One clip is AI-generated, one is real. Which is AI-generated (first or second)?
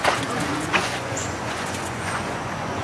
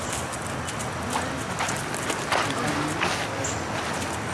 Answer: first